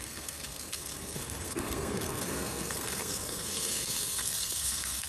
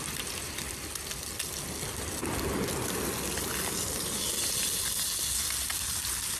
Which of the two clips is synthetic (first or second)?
first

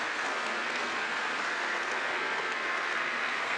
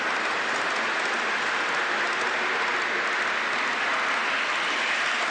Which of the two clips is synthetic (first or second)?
first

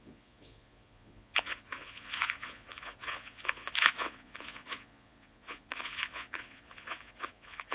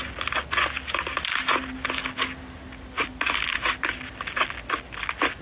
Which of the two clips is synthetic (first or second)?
first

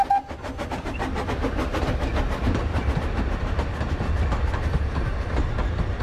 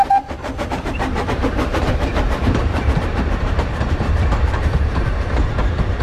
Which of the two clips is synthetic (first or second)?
second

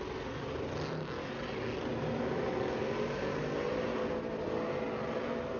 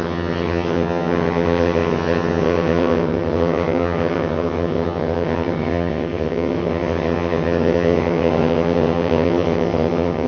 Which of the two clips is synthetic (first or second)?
second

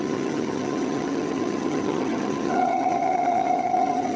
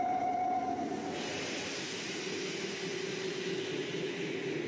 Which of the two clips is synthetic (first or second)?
first